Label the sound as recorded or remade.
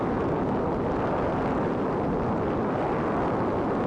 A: recorded